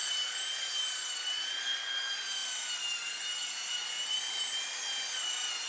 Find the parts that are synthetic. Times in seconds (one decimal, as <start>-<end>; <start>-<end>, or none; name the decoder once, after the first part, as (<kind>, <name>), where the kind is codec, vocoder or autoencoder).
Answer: none